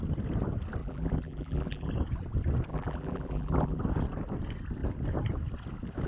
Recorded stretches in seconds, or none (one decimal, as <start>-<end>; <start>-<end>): 0.0-0.8; 1.9-2.7; 3.8-6.1